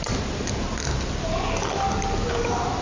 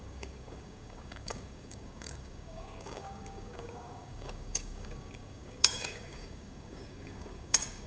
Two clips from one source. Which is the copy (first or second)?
second